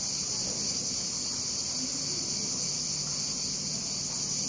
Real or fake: real